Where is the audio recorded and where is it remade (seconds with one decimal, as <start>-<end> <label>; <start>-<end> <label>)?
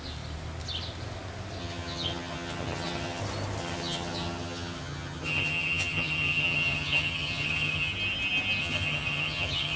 0.0-1.6 recorded; 1.6-3.2 remade; 3.2-3.6 recorded; 3.6-7.9 remade; 7.9-8.6 recorded; 8.6-9.8 remade